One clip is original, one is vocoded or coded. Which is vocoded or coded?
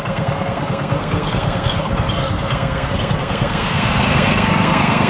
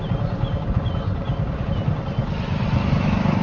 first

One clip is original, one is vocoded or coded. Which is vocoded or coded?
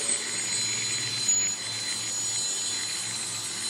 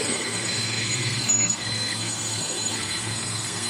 second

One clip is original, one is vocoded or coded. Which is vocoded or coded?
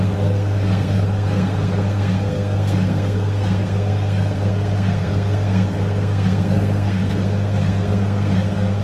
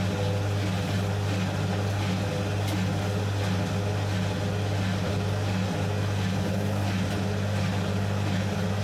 first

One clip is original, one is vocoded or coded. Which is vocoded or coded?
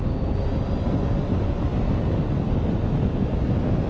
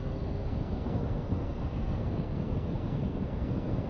second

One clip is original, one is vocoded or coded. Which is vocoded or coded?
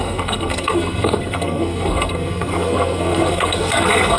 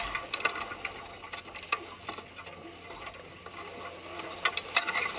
first